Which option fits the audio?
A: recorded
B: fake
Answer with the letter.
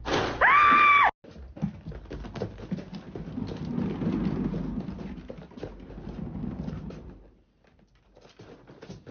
A